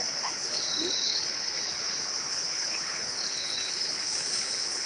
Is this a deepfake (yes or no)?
yes